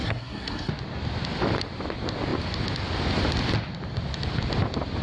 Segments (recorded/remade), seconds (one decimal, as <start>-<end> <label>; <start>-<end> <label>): 0.0-0.7 remade; 0.7-5.0 recorded

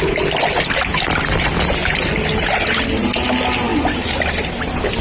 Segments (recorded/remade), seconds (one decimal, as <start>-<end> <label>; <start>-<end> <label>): 0.0-5.0 recorded

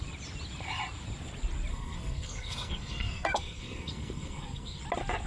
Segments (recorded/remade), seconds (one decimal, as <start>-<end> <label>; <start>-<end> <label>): 0.0-1.7 recorded; 1.7-4.8 remade; 4.8-5.3 recorded

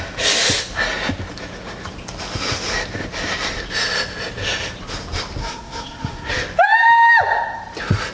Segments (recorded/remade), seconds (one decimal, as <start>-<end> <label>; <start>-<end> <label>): 0.0-5.4 recorded; 5.4-6.3 remade; 6.3-8.1 recorded

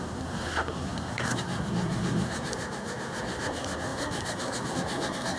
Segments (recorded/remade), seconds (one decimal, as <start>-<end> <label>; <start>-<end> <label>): 0.0-5.4 remade

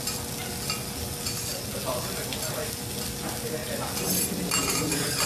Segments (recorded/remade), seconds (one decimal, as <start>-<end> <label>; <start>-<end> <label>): 0.0-5.3 recorded